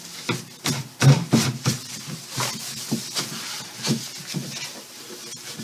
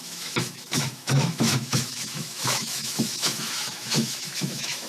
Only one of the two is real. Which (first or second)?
first